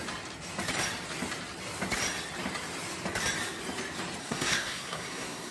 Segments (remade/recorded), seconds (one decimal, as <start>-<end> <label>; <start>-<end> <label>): 0.0-4.2 recorded; 4.2-5.5 remade